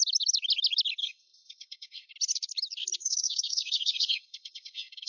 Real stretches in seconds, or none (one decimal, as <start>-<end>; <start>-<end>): 0.0-1.0; 2.1-3.0